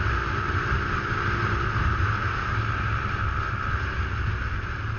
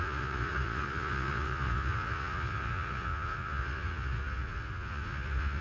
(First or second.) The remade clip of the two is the second